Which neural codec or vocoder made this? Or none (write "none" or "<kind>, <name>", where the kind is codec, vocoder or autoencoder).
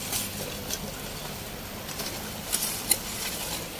none